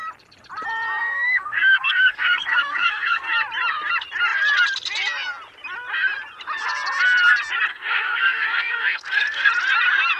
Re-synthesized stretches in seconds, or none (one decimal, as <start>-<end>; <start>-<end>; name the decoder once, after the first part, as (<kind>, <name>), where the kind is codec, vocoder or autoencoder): 1.0-3.3 (codec, SNAC); 7.7-9.5